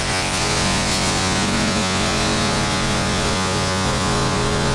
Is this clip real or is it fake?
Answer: fake